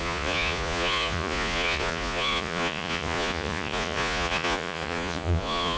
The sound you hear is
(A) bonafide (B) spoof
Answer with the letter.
B